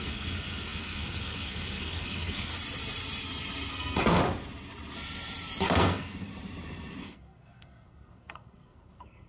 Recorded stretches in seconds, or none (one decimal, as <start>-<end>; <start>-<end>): 2.5-3.7; 4.2-5.6; 6.3-7.0